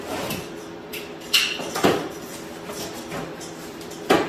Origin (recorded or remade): remade